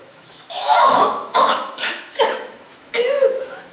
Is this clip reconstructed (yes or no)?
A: yes